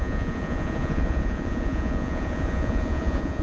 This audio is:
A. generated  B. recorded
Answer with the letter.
A